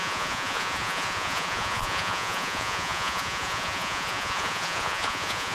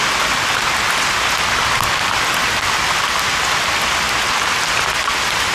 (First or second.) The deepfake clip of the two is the first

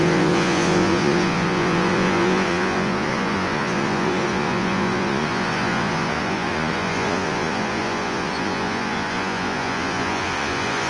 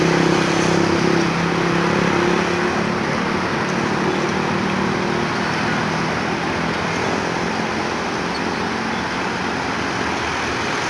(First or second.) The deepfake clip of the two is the first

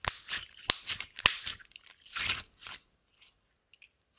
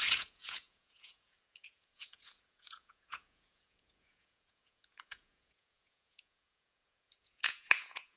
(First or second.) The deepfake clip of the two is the second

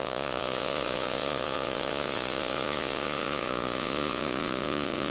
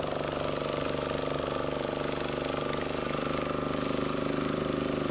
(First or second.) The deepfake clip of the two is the first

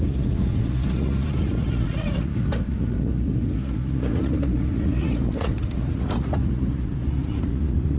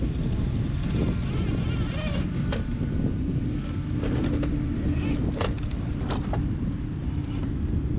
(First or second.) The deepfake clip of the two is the first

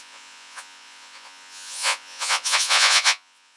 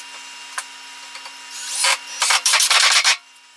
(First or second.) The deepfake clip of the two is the first